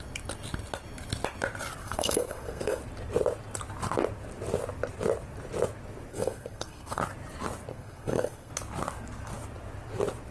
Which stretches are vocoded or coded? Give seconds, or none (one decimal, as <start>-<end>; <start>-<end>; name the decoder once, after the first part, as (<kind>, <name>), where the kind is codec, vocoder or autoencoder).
1.8-2.8 (codec, SNAC); 6.1-7.0; 7.7-8.5